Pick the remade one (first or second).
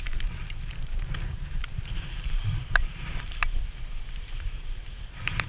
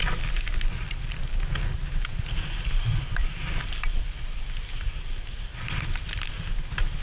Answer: first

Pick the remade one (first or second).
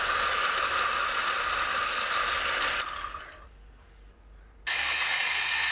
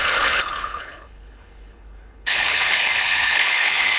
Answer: second